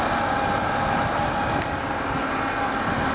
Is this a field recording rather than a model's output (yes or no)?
yes